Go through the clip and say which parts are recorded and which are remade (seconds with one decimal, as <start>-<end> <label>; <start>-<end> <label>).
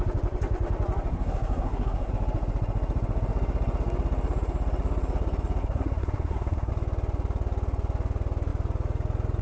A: 0.0-1.1 recorded; 1.1-2.1 remade; 2.1-5.6 recorded; 5.6-6.7 remade; 6.7-9.4 recorded